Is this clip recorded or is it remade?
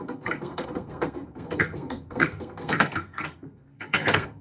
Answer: remade